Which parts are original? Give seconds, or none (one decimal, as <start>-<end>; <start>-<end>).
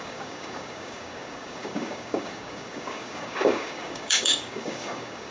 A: none